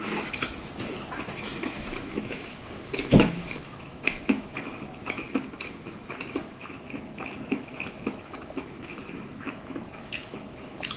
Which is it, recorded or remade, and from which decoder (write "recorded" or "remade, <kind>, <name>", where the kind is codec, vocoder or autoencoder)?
remade, autoencoder, DAC-VAE